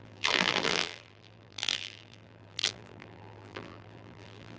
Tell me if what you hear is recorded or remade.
remade